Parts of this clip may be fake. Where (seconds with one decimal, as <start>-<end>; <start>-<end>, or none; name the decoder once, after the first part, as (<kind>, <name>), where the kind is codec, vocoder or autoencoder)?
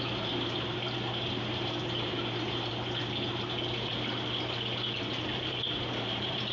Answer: 0.0-2.7 (vocoder, BigVGAN v2); 5.4-6.5